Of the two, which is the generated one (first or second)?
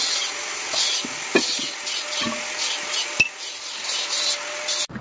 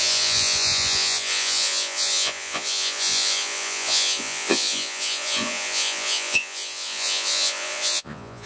second